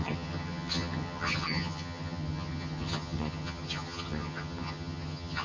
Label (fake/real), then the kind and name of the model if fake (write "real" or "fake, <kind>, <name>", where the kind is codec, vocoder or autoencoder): fake, vocoder, HiFi-GAN